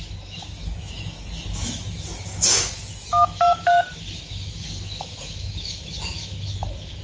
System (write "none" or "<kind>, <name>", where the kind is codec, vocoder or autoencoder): autoencoder, DAC-VAE